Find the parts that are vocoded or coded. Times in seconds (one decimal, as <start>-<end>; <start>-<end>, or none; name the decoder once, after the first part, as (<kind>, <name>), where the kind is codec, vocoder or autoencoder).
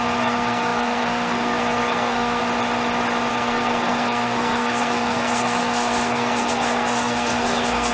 0.0-2.4 (codec, SNAC); 3.3-7.9